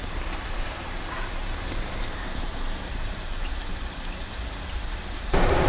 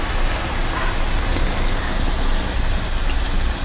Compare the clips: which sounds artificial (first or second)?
first